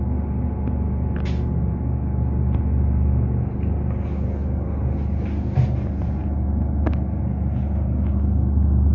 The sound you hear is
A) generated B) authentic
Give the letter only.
B